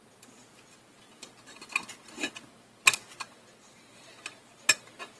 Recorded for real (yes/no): yes